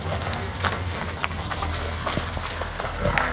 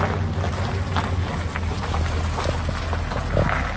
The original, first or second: second